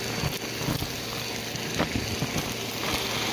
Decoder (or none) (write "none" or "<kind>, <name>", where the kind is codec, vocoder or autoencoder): none